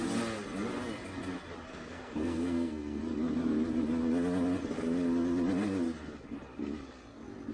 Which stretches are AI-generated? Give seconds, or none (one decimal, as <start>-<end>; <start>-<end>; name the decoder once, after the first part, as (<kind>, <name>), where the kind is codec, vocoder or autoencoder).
1.7-3.0 (codec, SNAC)